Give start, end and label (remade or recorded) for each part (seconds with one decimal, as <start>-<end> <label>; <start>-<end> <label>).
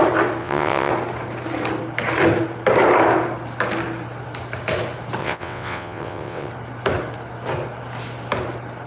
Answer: 0.0-0.4 recorded; 0.4-0.9 remade; 0.9-5.2 recorded; 5.2-6.5 remade; 6.5-8.9 recorded